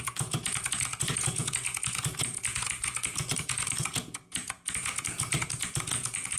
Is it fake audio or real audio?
fake